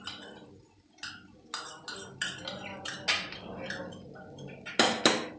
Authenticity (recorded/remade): recorded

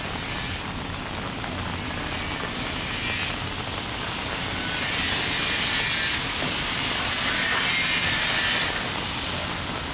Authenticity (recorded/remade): recorded